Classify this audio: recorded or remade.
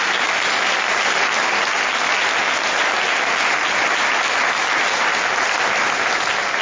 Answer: recorded